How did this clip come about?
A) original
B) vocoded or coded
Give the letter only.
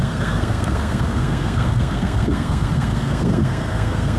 B